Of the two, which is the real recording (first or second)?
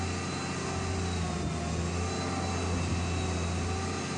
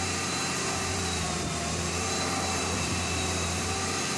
first